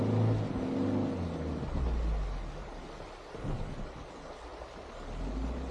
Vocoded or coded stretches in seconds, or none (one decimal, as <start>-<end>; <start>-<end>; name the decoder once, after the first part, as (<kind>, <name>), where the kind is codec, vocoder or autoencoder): none